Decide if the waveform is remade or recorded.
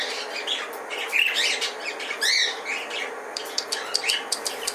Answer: remade